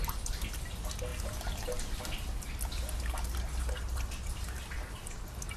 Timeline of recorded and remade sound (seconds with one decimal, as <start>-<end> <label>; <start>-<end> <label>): 0.0-5.6 recorded